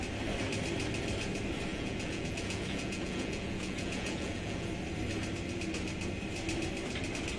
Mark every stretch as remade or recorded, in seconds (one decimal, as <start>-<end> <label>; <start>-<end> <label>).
0.0-1.7 recorded; 1.7-4.7 remade; 4.7-7.4 recorded